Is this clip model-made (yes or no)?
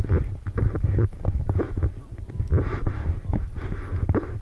no